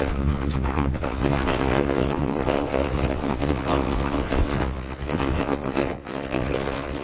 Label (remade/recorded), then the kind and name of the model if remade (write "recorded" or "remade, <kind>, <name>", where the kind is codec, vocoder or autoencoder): remade, vocoder, WaveNeXt